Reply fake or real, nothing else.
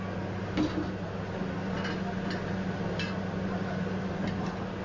real